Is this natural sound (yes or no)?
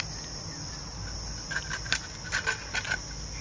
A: yes